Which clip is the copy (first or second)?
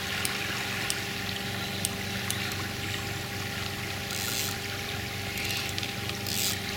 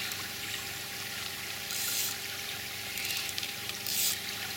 second